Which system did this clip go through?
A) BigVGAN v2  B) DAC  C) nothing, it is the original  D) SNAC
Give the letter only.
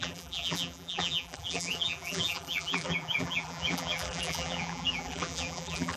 A